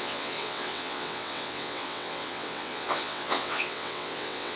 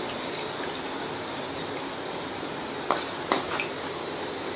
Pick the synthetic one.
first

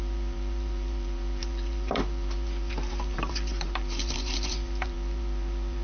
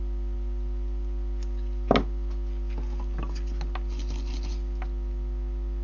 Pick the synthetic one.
first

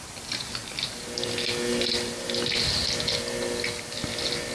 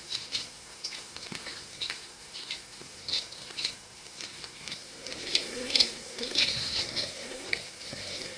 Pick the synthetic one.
second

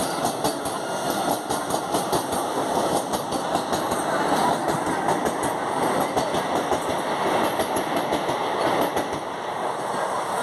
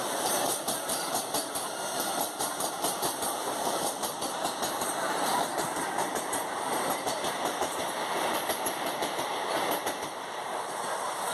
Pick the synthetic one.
second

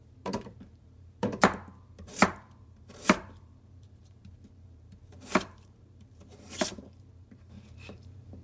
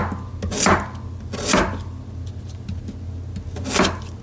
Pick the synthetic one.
first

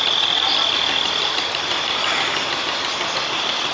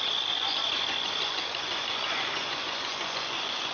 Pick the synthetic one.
second